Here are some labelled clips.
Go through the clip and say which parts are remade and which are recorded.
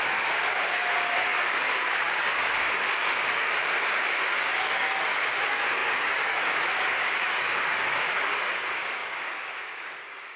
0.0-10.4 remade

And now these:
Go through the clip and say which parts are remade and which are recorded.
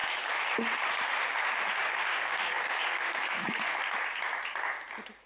0.0-1.8 recorded; 1.8-3.8 remade; 3.8-5.3 recorded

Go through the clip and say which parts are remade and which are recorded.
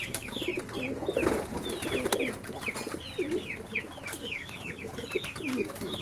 0.0-0.5 remade; 0.5-4.1 recorded; 4.1-6.0 remade